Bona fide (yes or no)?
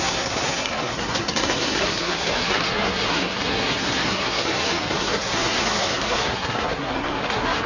no